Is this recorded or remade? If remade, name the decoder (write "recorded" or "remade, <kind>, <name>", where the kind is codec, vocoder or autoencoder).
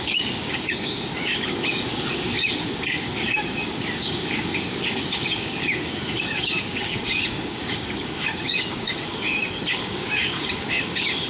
remade, codec, DAC